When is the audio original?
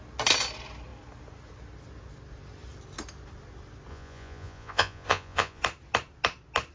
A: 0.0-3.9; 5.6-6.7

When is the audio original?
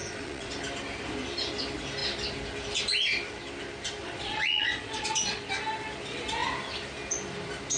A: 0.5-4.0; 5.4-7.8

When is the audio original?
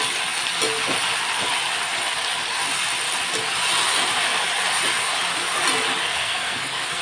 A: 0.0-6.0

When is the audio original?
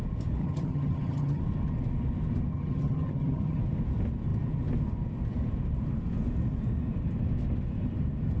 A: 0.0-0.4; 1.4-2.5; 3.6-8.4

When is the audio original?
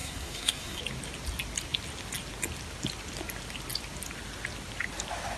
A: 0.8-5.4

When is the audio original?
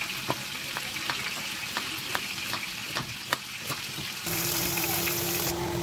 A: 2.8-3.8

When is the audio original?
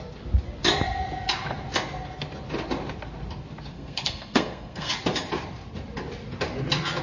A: 0.0-3.7; 4.9-7.0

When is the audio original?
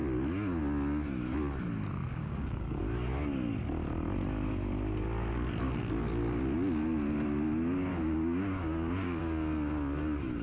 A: 0.0-2.1; 2.8-7.9; 9.2-10.4